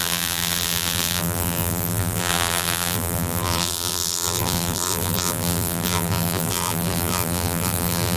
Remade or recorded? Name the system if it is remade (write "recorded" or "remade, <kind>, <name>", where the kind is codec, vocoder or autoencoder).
remade, vocoder, BigVGAN v2